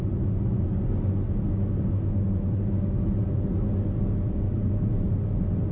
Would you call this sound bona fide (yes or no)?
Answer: yes